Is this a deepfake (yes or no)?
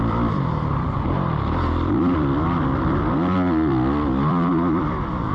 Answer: yes